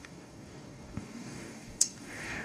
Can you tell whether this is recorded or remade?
remade